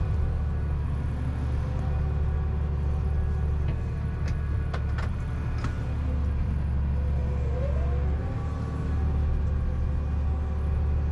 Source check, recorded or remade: recorded